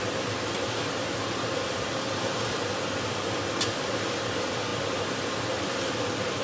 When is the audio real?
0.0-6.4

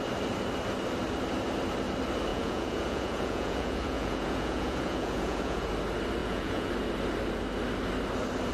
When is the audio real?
0.0-2.3; 5.7-6.2; 6.7-8.5

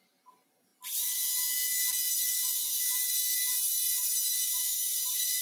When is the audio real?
0.0-5.4